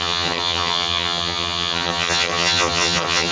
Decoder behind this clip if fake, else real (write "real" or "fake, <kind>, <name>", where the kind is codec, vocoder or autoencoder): fake, vocoder, HiFi-GAN